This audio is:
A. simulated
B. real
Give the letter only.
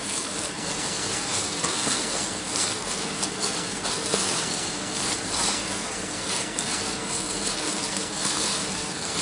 A